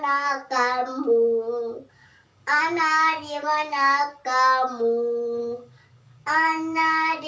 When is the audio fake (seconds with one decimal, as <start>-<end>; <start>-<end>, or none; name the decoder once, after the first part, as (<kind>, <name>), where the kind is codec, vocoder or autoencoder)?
0.0-0.8 (codec, DAC); 1.9-4.2; 5.4-7.3